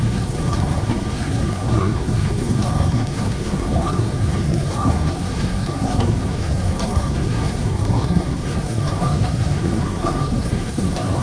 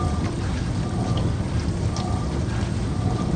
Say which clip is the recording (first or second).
second